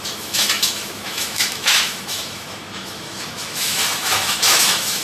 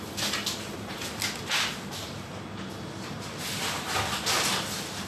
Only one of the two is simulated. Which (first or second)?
first